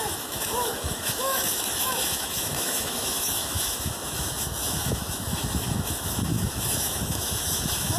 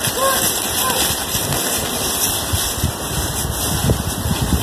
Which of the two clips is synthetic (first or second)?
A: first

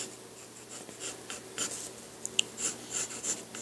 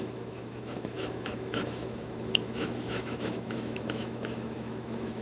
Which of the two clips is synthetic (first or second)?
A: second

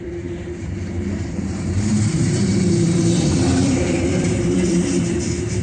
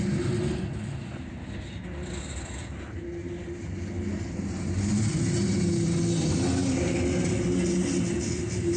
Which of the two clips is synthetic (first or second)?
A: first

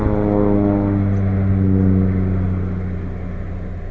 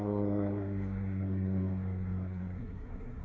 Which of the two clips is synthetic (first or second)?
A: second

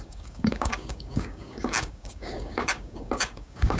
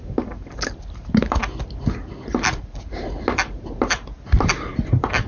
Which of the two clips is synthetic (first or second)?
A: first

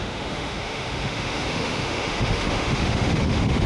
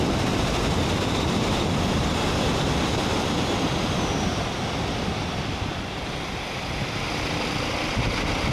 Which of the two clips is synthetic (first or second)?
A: first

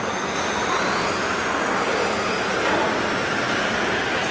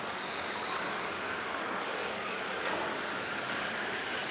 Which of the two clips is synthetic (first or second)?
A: second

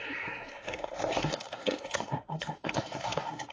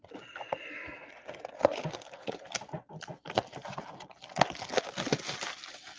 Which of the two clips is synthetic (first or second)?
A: first